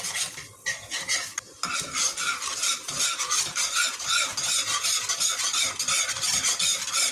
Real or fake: real